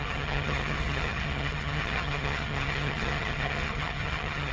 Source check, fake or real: fake